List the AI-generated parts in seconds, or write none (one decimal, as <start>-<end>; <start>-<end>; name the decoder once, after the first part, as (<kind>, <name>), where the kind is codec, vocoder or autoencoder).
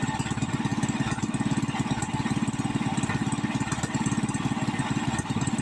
none